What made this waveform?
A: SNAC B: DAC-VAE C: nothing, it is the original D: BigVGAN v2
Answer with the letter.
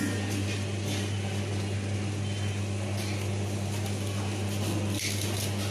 C